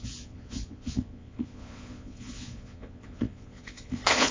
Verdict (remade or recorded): remade